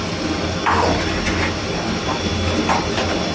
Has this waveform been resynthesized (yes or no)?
no